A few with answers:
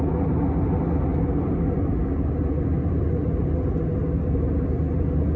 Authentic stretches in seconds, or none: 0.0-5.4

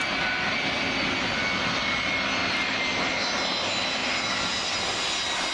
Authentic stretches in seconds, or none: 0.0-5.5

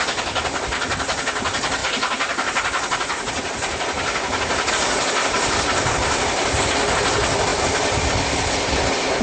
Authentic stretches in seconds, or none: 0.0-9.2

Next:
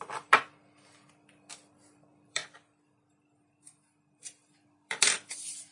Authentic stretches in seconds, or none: 2.4-4.5

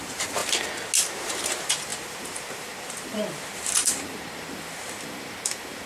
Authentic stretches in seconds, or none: 0.4-1.4

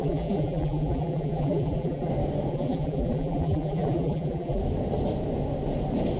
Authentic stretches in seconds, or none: 2.1-2.5; 4.6-6.2

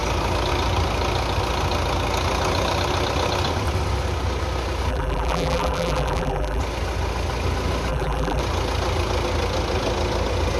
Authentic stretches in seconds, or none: 0.0-4.9; 6.6-7.9; 8.4-10.6